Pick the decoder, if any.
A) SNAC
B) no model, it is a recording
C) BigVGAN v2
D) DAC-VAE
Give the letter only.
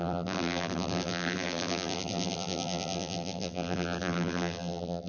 C